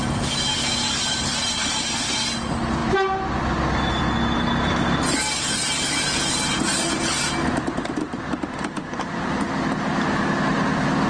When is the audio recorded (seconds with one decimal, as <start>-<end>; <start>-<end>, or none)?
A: 0.0-11.1